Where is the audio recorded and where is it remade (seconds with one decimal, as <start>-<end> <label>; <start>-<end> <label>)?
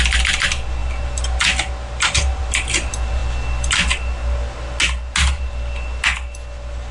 0.0-6.9 recorded